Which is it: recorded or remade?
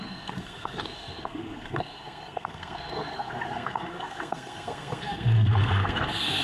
remade